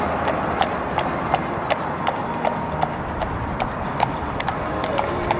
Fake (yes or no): yes